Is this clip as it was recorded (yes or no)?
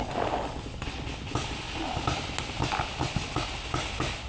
yes